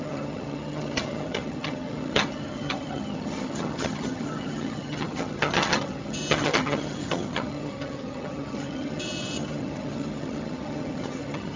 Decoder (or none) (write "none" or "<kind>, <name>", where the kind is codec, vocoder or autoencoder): vocoder, HiFi-GAN